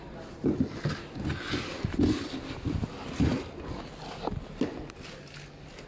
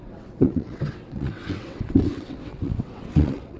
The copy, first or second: second